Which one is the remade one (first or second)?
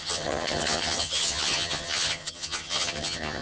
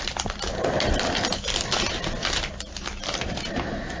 first